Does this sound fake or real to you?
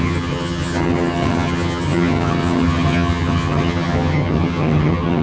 fake